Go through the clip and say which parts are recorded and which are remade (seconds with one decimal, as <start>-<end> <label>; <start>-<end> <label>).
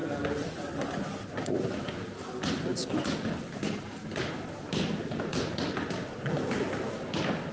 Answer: 0.0-7.5 recorded